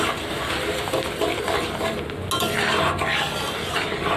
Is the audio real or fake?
real